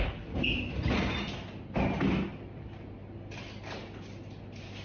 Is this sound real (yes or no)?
yes